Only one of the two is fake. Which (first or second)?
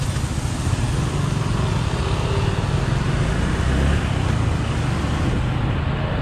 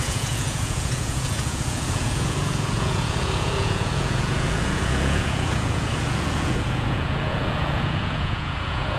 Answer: second